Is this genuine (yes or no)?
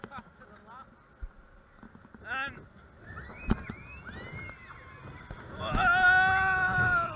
yes